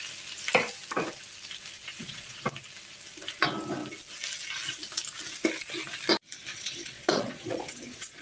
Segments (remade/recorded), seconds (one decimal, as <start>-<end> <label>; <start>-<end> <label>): 0.0-1.8 recorded; 1.8-2.4 remade; 2.4-6.5 recorded; 6.5-8.2 remade